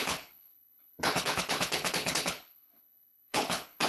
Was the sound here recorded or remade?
remade